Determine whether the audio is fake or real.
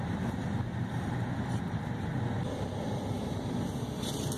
real